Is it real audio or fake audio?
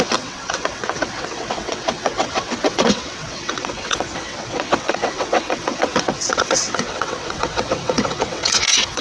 fake